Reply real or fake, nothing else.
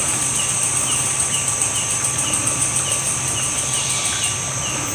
real